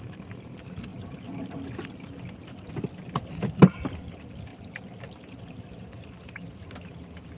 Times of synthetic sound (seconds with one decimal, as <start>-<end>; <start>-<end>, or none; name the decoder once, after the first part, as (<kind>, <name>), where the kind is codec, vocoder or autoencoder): 4.5-5.4 (vocoder, BigVGAN v2)